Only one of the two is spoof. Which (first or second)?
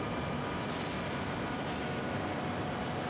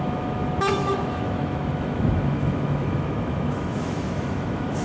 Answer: second